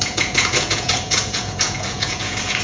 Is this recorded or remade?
remade